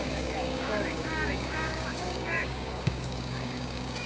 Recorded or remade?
remade